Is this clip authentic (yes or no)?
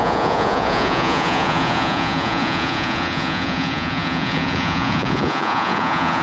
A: no